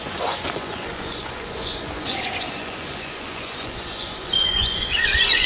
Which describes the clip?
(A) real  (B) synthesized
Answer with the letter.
B